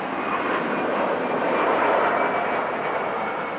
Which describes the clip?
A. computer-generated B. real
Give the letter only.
B